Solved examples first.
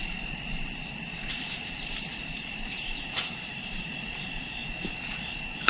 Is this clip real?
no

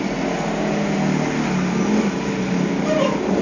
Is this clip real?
yes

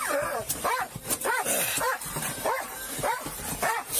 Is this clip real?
no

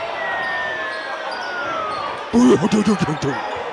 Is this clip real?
yes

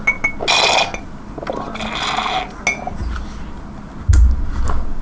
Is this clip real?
yes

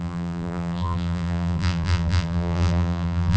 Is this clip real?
no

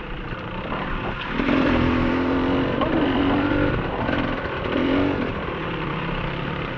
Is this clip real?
no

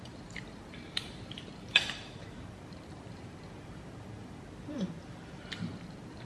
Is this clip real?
no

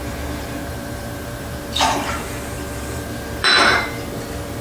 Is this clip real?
no